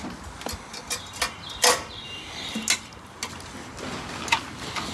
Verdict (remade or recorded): recorded